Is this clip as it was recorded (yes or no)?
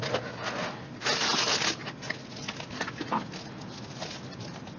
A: yes